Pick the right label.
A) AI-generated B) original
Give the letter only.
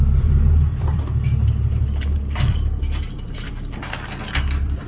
A